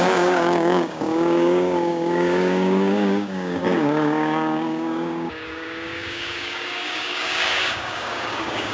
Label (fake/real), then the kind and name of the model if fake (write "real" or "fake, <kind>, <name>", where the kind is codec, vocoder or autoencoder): fake, codec, DAC